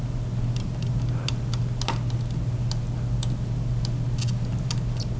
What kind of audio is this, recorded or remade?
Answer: recorded